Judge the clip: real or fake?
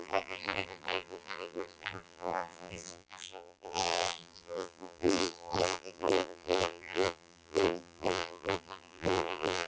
fake